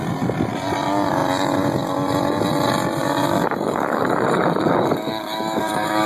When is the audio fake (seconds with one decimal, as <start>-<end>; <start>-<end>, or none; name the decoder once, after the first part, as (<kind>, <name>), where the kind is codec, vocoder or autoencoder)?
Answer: 3.0-6.1 (codec, DAC)